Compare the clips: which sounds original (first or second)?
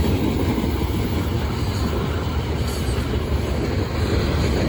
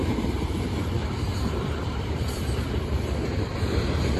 first